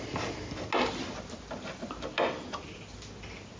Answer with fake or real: real